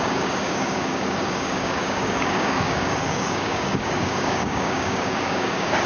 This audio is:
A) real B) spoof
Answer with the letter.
B